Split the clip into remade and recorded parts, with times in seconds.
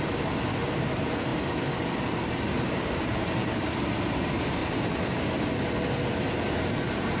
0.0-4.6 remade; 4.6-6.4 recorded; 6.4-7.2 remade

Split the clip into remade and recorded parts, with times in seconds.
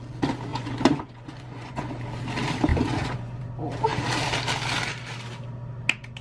0.0-0.5 recorded; 0.5-1.9 remade; 1.9-2.7 recorded; 2.7-3.4 remade; 3.4-6.2 recorded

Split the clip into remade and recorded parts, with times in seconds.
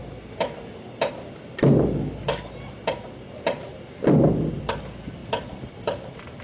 0.0-3.7 recorded; 3.7-6.4 remade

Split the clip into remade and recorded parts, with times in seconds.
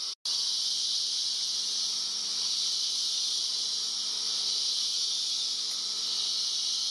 0.0-2.3 recorded; 2.3-5.3 remade; 5.3-6.9 recorded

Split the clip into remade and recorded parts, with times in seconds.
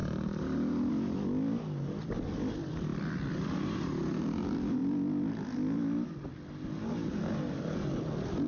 0.0-8.5 recorded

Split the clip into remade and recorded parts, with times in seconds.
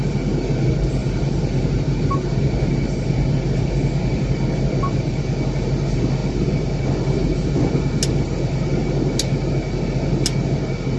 0.0-11.0 recorded